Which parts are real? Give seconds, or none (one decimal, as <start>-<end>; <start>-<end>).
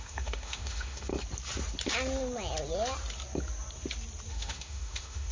1.1-4.3